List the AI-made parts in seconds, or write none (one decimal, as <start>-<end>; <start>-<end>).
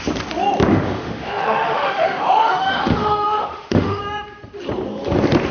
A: 0.7-4.0